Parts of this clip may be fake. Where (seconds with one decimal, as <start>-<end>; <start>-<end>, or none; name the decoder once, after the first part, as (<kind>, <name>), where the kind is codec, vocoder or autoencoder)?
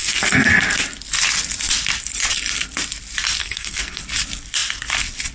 0.0-0.5 (codec, SNAC); 3.4-4.0